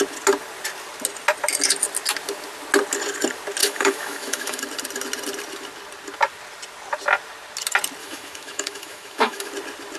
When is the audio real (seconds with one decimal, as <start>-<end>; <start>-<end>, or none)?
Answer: 0.0-3.6; 4.6-8.0; 9.5-10.0